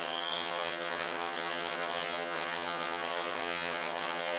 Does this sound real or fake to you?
fake